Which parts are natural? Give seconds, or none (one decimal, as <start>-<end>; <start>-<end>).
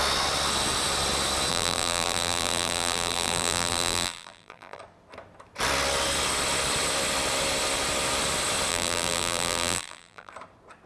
0.0-1.5; 4.8-8.7; 10.3-10.9